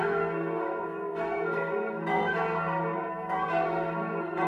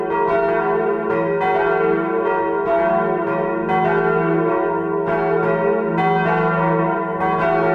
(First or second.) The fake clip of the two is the first